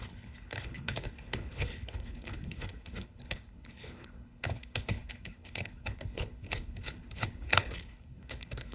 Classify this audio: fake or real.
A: fake